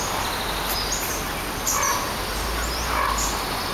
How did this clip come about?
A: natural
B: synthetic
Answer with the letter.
A